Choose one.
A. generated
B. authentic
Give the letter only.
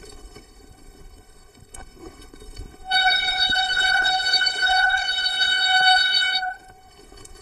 A